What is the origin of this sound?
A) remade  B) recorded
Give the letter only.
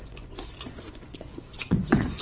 A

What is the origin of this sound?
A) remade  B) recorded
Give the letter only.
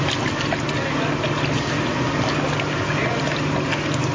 B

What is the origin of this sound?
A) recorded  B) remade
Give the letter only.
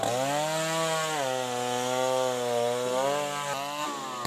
A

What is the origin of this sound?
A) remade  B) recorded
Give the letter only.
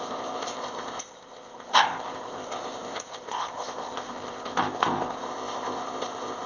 A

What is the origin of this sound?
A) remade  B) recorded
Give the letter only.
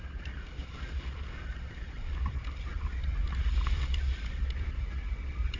B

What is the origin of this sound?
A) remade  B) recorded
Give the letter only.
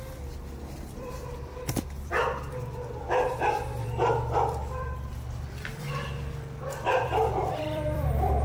A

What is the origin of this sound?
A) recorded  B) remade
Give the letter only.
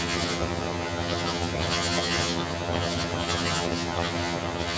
B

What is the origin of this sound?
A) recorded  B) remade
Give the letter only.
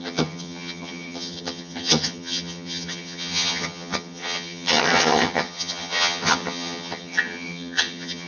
B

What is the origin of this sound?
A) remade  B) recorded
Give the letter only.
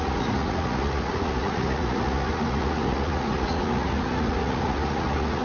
A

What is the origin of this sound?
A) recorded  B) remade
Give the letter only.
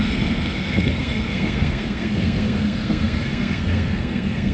B